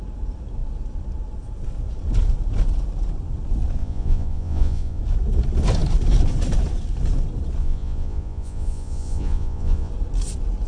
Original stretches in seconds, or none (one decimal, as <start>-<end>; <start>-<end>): 0.0-3.8; 5.0-7.6; 9.9-10.7